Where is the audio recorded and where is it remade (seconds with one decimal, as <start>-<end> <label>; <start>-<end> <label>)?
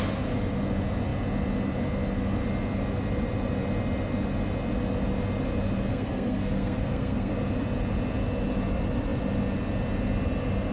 0.0-5.9 recorded; 5.9-7.3 remade; 7.3-10.7 recorded